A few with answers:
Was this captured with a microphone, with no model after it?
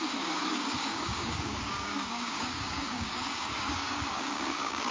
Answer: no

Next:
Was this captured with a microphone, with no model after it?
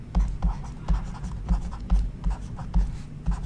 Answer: yes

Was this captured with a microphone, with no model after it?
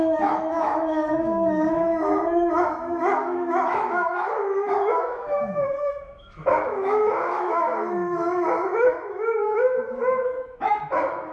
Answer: no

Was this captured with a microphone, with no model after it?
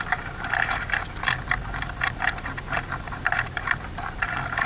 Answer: no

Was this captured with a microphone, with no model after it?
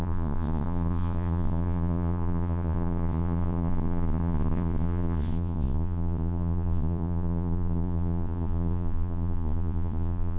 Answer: no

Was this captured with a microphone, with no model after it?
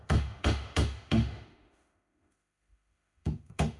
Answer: no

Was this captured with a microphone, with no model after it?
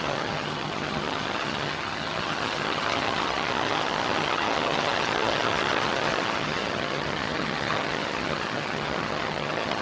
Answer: no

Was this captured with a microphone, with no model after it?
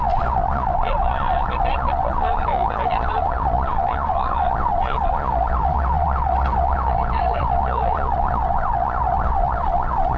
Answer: no